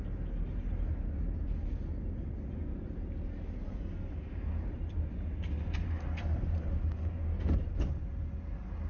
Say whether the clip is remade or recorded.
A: recorded